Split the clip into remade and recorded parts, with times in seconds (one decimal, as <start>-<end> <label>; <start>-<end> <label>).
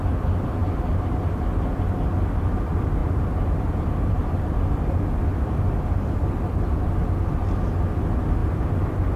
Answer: 0.0-3.0 recorded; 3.0-4.6 remade; 4.6-9.2 recorded